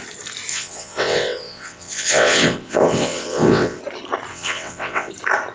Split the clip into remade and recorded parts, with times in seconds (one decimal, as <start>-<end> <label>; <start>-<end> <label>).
0.0-0.5 recorded; 0.5-3.8 remade; 3.8-4.3 recorded; 4.3-5.1 remade; 5.1-5.5 recorded